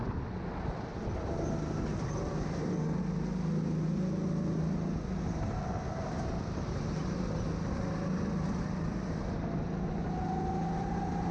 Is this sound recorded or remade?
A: recorded